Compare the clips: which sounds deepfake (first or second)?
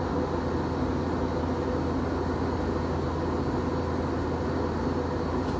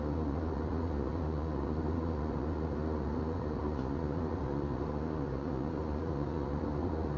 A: second